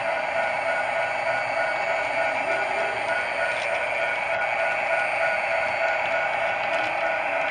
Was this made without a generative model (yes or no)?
yes